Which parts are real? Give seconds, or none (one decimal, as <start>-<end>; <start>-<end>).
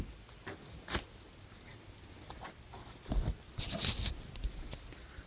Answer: 0.0-5.3